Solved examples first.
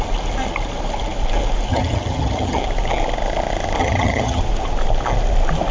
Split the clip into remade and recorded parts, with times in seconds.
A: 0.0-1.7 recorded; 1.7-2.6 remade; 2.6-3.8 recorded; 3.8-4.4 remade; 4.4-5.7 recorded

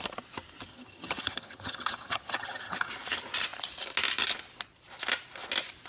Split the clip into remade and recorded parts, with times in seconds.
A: 0.0-0.7 recorded; 0.7-2.9 remade; 2.9-5.9 recorded

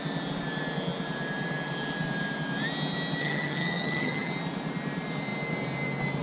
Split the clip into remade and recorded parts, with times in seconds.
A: 0.0-3.2 recorded; 3.2-4.3 remade; 4.3-6.2 recorded

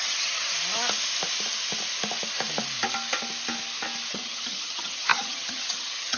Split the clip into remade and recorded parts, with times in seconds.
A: 0.0-0.4 remade; 0.4-4.1 recorded; 4.1-6.2 remade

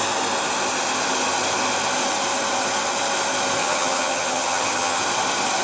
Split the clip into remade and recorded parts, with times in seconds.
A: 0.0-3.6 recorded; 3.6-5.0 remade; 5.0-5.6 recorded

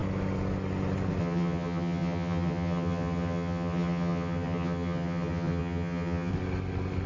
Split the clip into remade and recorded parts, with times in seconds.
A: 0.0-1.2 recorded; 1.2-6.3 remade; 6.3-7.1 recorded